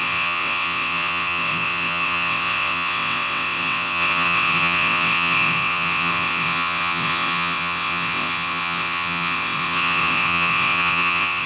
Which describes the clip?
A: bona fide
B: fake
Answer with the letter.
B